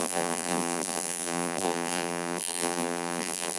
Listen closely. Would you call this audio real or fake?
fake